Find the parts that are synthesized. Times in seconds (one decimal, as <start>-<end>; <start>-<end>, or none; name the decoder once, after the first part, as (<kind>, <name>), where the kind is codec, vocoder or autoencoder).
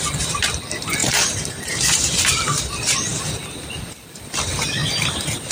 0.0-5.5 (vocoder, BigVGAN v2)